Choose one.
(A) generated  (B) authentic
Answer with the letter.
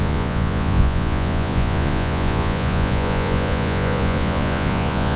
A